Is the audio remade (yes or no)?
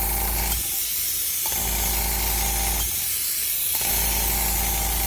no